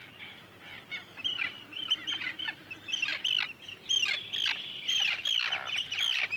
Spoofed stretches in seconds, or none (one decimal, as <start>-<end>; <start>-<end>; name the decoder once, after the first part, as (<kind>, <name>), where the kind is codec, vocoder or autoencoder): 0.0-2.7 (vocoder, BigVGAN v2)